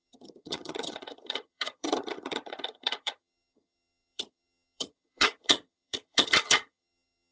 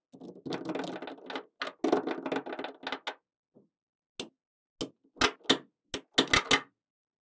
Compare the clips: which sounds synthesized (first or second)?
first